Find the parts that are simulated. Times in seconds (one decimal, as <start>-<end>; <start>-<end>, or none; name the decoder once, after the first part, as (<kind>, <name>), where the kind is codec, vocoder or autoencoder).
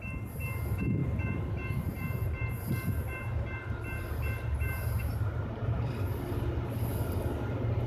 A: 1.0-5.7 (vocoder, BigVGAN v2)